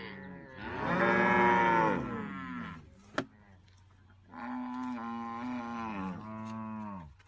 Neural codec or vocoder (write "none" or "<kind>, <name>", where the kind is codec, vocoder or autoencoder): none